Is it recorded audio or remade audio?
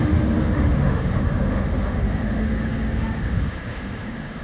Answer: remade